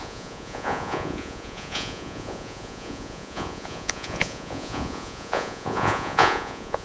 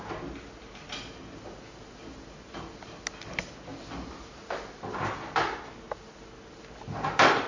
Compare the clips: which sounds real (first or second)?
second